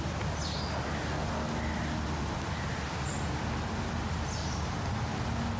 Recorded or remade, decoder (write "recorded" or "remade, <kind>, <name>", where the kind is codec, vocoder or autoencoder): recorded